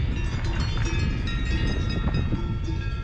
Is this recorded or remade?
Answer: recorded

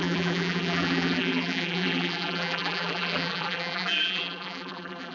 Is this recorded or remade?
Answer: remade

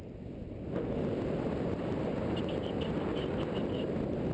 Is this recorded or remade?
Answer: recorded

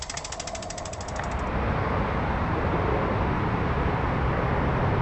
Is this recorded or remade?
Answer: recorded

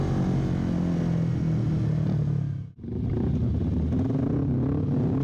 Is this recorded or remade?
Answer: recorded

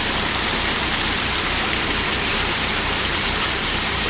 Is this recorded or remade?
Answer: remade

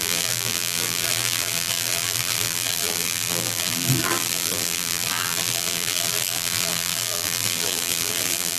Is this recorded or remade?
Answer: remade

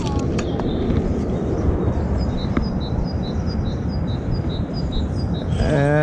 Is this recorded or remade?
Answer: recorded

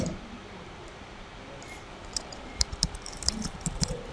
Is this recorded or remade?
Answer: remade